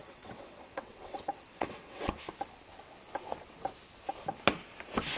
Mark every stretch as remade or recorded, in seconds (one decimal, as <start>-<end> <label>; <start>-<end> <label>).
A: 0.0-2.1 remade; 2.1-5.2 recorded

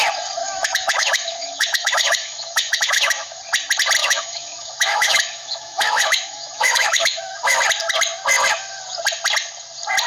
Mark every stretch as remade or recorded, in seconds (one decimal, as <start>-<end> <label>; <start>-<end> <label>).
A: 0.0-0.4 recorded; 0.4-3.4 remade; 3.4-4.0 recorded; 4.0-7.6 remade; 7.6-10.1 recorded

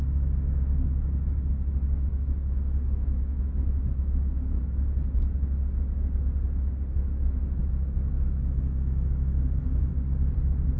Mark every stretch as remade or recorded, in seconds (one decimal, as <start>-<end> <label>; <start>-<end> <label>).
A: 0.0-2.1 recorded; 2.1-4.6 remade; 4.6-7.6 recorded; 7.6-9.9 remade; 9.9-10.8 recorded

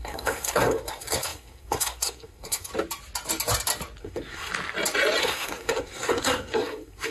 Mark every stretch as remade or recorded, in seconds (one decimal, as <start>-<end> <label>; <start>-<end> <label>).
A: 0.0-2.7 remade; 2.7-4.0 recorded; 4.0-4.5 remade; 4.5-5.2 recorded; 5.2-7.1 remade

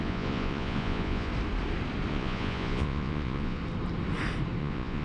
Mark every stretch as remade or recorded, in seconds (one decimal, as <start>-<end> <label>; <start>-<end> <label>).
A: 0.0-1.3 remade; 1.3-2.1 recorded; 2.1-3.6 remade; 3.6-4.6 recorded; 4.6-5.0 remade